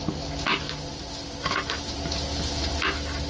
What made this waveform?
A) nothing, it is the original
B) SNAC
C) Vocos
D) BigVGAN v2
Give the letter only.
A